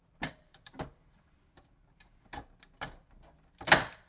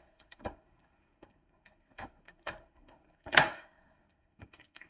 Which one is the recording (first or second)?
first